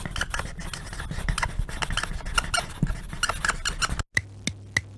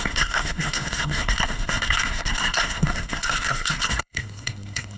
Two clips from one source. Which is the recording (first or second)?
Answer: first